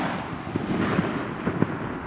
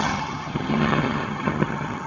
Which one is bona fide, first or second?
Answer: first